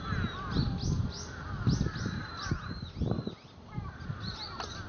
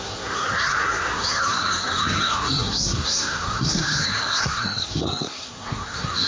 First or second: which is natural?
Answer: first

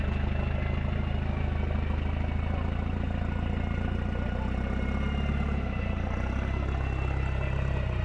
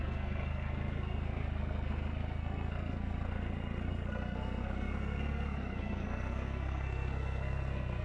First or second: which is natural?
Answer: first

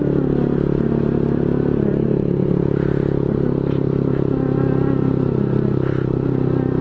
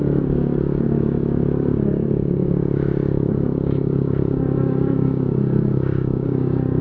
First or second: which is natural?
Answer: first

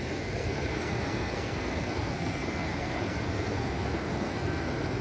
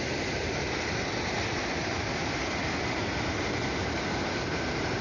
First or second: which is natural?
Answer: second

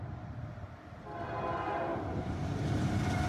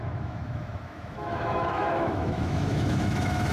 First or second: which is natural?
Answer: first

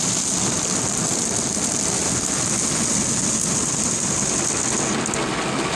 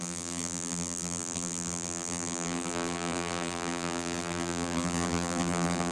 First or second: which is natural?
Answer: first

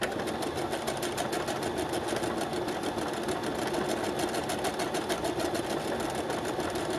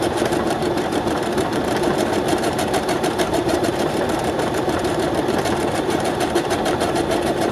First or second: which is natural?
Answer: first